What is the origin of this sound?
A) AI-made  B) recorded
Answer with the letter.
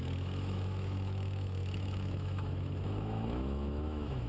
A